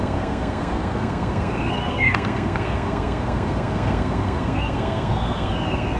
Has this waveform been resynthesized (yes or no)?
yes